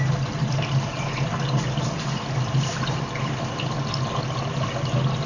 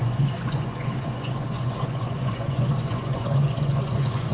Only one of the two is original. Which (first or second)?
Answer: first